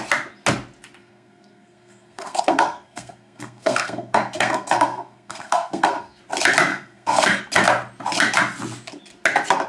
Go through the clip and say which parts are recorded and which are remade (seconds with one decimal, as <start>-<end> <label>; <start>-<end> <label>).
0.0-1.0 recorded; 1.0-6.2 remade; 6.2-6.7 recorded; 6.7-7.4 remade; 7.4-9.7 recorded